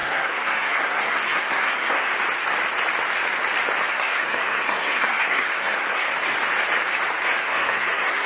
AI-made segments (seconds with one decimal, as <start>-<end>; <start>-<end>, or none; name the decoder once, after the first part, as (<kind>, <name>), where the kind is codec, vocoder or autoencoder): 0.0-2.1 (codec, SNAC); 3.9-6.1; 7.4-8.3